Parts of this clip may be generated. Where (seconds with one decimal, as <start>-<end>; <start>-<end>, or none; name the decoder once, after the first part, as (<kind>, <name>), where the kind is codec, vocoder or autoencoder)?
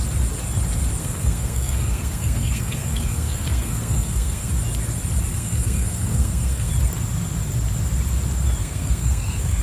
1.0-4.5 (codec, SNAC); 5.3-6.7; 8.6-9.6